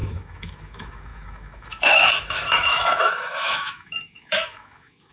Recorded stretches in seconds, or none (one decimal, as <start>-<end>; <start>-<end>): none